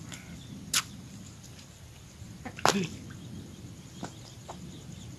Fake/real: real